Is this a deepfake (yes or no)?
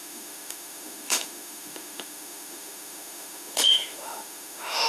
yes